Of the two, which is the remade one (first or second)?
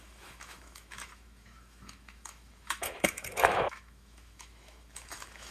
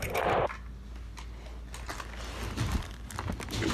first